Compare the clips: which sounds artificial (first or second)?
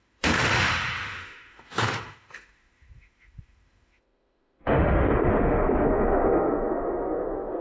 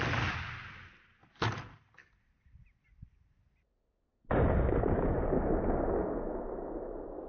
first